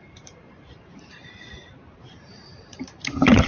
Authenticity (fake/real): fake